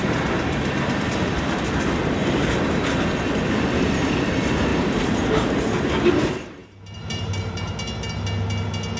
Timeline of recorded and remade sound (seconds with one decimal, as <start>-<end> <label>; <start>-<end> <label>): 0.0-4.7 recorded; 4.7-5.6 remade; 5.6-6.6 recorded; 6.6-7.7 remade; 7.7-9.0 recorded